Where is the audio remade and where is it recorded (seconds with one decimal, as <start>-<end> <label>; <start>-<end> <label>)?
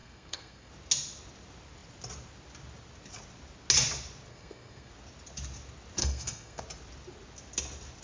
0.0-0.7 remade; 0.7-4.3 recorded; 4.3-4.9 remade; 4.9-6.0 recorded; 6.0-6.6 remade; 6.6-8.0 recorded